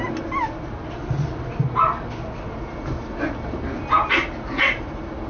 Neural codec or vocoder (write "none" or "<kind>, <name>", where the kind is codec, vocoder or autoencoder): none